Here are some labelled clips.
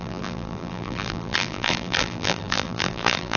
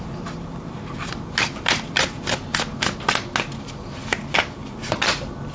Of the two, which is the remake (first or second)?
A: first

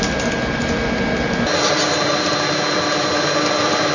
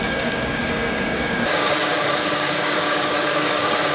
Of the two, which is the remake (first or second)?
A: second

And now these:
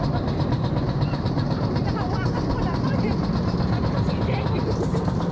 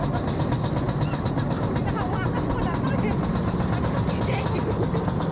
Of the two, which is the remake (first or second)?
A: first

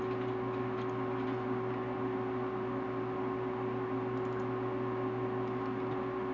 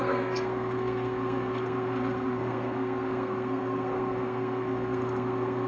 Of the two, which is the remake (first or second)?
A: second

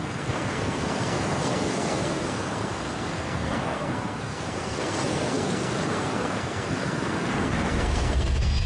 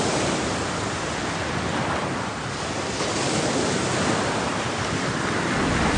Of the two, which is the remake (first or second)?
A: first